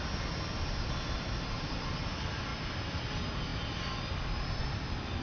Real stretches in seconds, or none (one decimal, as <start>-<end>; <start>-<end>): 0.0-5.2